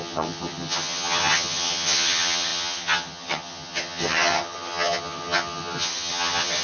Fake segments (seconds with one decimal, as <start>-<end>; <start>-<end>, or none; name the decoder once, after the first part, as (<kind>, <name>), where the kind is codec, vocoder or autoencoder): 0.0-6.6 (vocoder, HiFi-GAN)